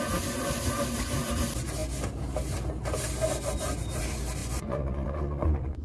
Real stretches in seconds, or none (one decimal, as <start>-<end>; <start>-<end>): 0.0-4.4